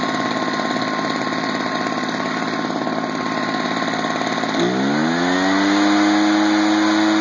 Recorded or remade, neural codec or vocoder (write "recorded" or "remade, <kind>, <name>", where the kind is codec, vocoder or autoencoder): recorded